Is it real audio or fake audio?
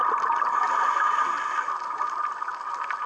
real